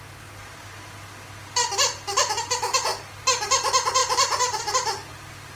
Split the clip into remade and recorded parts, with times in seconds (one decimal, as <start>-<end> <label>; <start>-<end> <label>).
0.0-4.0 recorded; 4.0-4.6 remade; 4.6-5.6 recorded